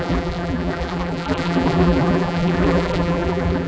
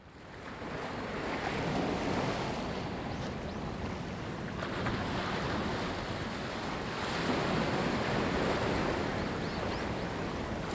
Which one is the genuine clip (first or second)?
second